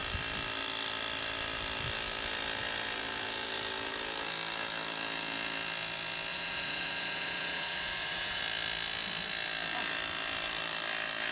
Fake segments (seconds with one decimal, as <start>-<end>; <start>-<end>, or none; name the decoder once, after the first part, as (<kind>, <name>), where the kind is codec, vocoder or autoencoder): 6.3-8.4 (vocoder, Vocos)